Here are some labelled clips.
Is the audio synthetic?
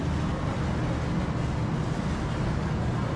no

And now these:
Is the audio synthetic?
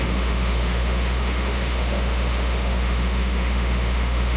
yes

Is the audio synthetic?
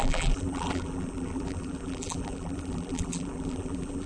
yes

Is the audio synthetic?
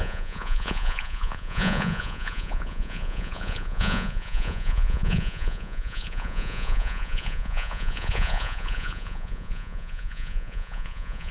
yes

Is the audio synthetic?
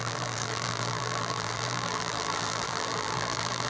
yes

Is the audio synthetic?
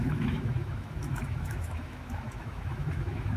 yes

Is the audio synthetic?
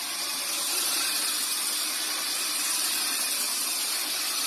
no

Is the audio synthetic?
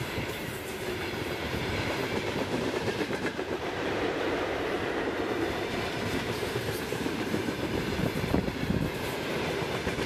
yes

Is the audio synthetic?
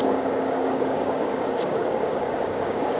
yes